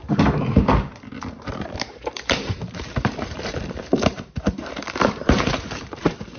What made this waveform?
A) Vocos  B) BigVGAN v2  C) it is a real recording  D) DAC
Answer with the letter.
B